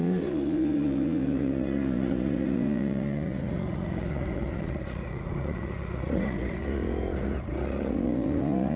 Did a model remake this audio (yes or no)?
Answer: yes